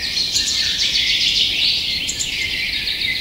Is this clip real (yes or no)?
no